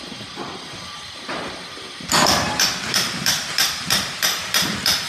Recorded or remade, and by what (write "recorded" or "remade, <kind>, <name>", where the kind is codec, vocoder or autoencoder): remade, vocoder, BigVGAN v2